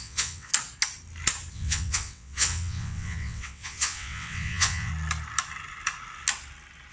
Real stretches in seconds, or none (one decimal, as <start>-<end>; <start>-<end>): 0.5-1.5; 4.9-6.9